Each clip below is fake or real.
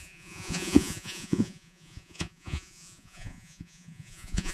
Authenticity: fake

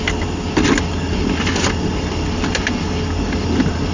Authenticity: real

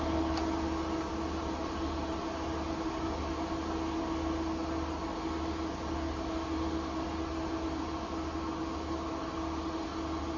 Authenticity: real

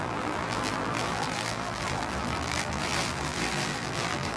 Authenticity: fake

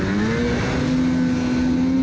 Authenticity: real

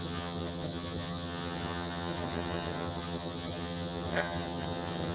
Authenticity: fake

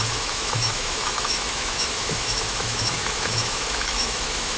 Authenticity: fake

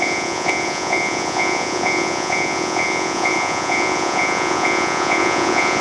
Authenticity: fake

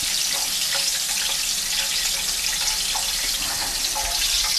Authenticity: real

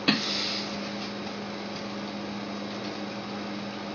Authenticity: real